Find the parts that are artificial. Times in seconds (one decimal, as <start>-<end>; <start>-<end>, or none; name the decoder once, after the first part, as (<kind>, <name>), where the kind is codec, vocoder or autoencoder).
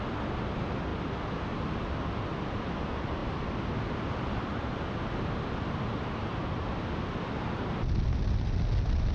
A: none